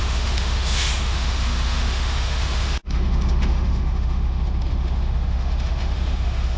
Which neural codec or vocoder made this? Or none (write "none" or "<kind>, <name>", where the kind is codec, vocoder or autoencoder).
autoencoder, DAC-VAE